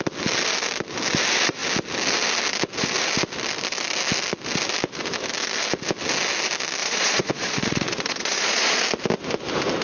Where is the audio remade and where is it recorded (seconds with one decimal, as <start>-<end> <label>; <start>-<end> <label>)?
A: 0.0-6.8 recorded; 6.8-8.8 remade; 8.8-9.8 recorded